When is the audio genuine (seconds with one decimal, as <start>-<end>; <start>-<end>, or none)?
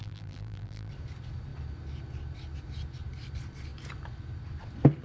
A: 0.9-5.0